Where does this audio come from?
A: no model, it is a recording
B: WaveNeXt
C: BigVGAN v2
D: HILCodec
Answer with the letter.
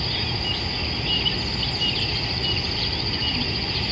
A